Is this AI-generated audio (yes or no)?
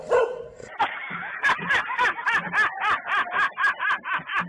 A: no